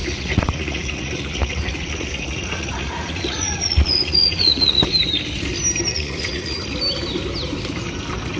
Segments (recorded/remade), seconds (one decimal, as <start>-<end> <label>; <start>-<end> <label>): 0.0-4.8 remade; 4.8-5.9 recorded; 5.9-6.6 remade; 6.6-8.4 recorded